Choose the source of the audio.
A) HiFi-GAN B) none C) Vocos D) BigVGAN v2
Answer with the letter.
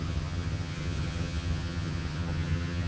A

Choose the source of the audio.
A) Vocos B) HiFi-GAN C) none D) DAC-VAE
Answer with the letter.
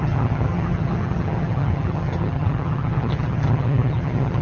B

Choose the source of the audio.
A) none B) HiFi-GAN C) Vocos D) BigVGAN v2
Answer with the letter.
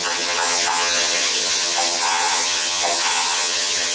B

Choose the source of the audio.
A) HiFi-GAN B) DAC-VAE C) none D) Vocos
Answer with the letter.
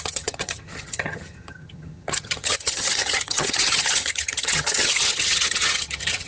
A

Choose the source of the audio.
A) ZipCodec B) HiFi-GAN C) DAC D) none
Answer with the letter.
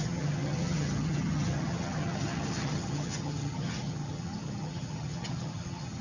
B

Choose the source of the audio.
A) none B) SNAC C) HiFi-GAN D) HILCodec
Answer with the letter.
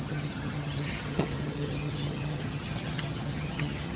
C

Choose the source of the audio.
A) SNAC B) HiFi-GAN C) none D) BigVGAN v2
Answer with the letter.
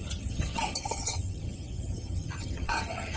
B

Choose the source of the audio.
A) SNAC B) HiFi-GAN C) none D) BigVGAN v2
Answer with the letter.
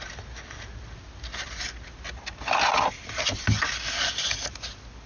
C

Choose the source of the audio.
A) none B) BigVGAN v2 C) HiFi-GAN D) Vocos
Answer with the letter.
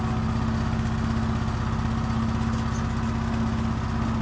A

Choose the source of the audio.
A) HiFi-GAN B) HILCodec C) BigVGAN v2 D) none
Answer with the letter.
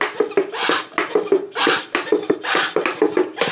D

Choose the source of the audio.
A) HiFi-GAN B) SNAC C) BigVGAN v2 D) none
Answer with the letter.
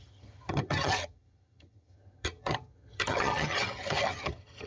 A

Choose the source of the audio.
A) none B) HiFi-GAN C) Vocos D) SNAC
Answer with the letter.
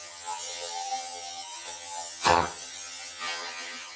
B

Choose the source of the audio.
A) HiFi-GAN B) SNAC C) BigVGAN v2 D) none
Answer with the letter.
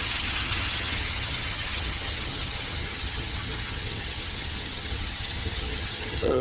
A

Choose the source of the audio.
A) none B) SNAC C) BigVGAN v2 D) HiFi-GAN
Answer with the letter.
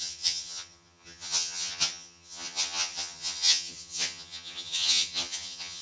D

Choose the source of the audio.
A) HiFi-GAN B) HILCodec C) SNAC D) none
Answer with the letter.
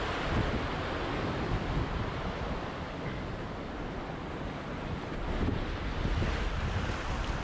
D